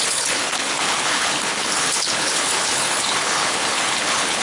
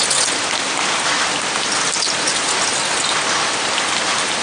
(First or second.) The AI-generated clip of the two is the first